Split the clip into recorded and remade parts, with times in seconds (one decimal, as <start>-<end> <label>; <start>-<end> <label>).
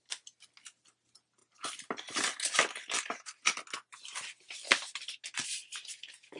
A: 0.0-6.4 recorded